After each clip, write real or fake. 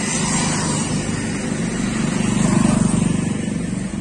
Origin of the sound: real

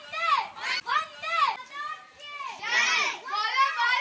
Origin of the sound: real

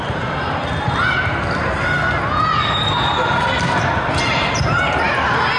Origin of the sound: real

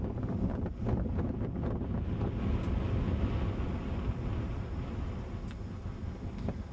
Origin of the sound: real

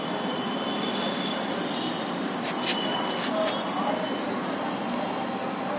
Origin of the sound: real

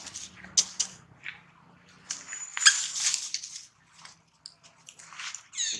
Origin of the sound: real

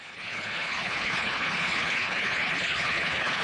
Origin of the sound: fake